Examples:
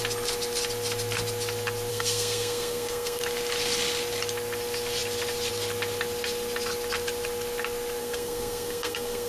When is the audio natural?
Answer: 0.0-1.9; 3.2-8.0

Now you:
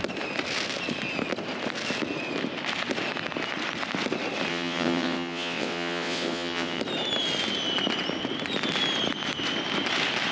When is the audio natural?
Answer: 0.0-4.5; 6.8-10.3

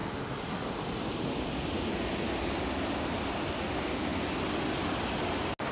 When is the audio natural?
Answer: 0.0-5.7

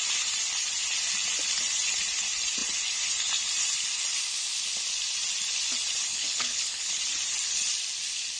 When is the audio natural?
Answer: 0.0-6.1; 7.0-8.4

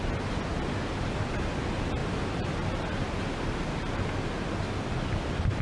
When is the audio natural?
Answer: 0.0-5.6

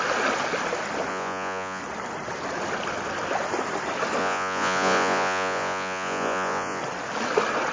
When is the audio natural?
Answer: 0.0-1.1; 1.8-4.2; 6.8-7.7

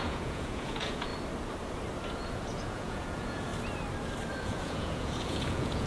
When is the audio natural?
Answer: 1.1-2.3; 3.5-4.4

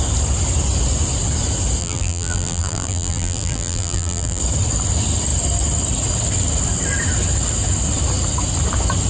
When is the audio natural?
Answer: 0.0-1.8; 4.4-9.1